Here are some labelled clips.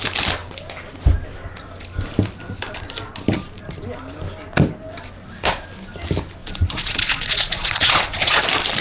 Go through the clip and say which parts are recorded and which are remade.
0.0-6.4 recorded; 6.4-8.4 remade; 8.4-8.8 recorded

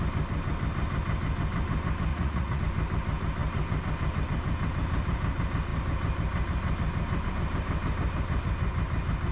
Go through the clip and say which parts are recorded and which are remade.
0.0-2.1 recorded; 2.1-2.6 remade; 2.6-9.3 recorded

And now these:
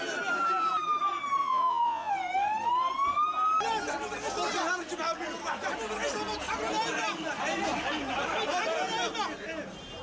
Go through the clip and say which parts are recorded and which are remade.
0.0-1.4 recorded; 1.4-2.1 remade; 2.1-10.0 recorded

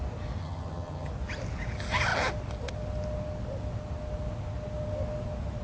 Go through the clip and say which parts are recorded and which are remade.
0.0-0.4 recorded; 0.4-1.1 remade; 1.1-5.6 recorded

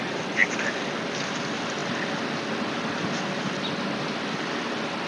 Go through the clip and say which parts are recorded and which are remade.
0.0-5.1 recorded

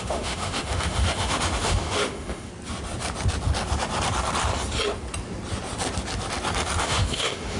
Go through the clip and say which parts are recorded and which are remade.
0.0-2.5 remade; 2.5-6.8 recorded; 6.8-7.6 remade